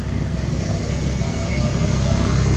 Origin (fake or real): fake